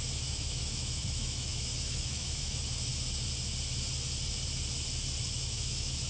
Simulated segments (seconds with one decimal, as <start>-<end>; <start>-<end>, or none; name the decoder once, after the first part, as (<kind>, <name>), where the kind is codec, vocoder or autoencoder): 0.0-2.9 (autoencoder, DAC-VAE); 5.3-6.1